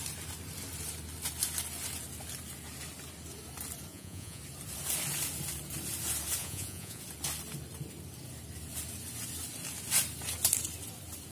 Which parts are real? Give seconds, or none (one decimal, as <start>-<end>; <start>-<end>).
0.0-3.9; 4.4-6.4; 7.0-11.3